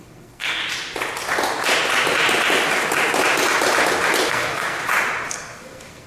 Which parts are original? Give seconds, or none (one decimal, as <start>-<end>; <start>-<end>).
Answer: 0.6-4.3; 4.8-5.3

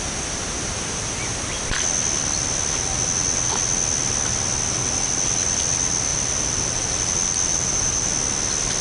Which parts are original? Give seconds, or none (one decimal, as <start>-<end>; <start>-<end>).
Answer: 0.0-6.1; 6.9-7.5; 8.1-8.8

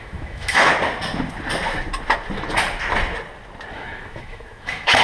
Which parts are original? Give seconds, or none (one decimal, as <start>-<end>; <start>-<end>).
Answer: 0.7-3.7

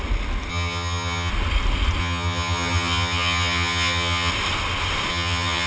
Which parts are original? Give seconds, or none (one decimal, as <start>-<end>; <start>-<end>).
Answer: 0.0-0.5; 1.3-2.0; 4.3-5.1

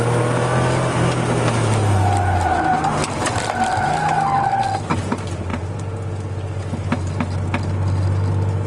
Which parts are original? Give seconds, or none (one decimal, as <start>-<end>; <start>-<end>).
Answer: 0.0-8.7

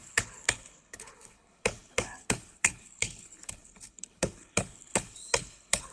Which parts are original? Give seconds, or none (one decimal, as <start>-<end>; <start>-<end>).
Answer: none

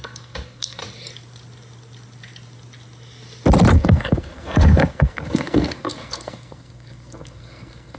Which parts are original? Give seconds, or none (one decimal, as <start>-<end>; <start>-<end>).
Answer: 0.8-3.7